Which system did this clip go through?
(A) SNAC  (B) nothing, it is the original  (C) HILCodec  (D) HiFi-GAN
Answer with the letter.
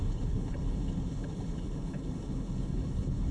C